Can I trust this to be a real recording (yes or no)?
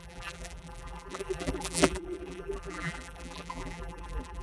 no